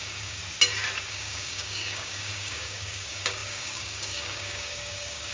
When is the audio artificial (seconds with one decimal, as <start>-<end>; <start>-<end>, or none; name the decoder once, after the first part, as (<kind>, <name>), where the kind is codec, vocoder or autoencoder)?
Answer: 0.0-0.4 (codec, DAC); 1.1-5.3